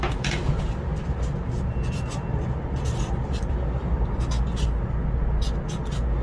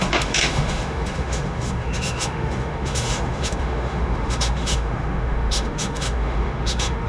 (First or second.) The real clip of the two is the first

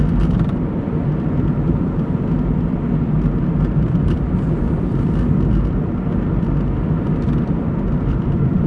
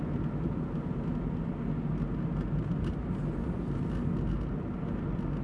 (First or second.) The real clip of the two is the second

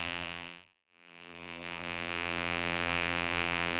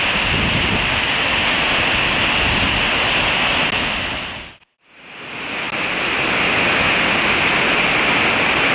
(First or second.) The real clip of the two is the second